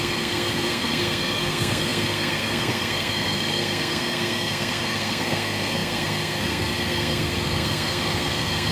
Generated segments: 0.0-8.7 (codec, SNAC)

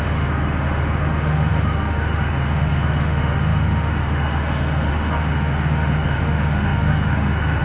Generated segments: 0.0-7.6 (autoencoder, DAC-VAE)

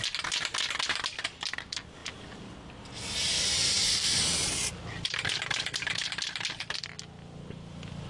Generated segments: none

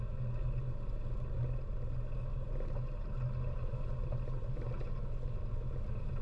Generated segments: 2.3-3.1 (vocoder, BigVGAN v2); 4.0-4.9

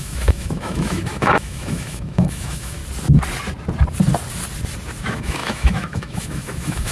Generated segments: 0.0-2.8 (autoencoder, DAC-VAE); 5.0-6.9

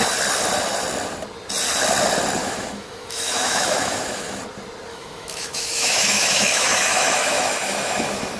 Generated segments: 2.4-4.4 (autoencoder, DAC-VAE); 4.9-8.4

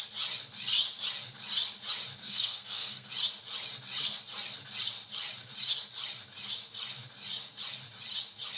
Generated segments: 2.2-3.1 (codec, SNAC)